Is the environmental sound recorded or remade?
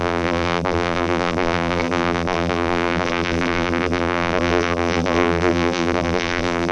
remade